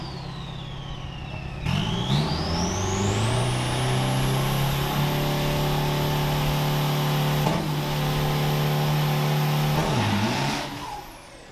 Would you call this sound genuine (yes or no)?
yes